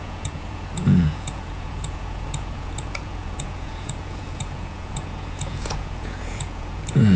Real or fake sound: fake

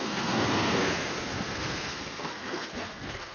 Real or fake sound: fake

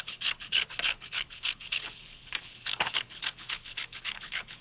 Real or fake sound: fake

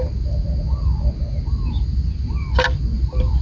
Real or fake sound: real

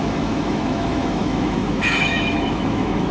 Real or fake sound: fake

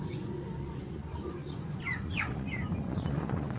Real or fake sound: fake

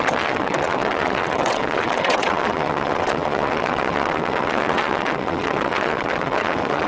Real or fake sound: fake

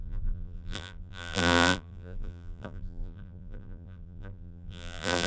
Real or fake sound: fake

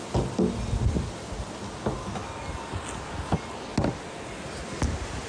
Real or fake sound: real